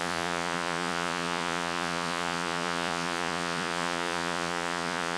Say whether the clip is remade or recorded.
remade